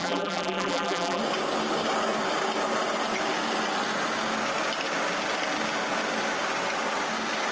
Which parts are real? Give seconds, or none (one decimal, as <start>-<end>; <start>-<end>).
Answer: 1.2-7.5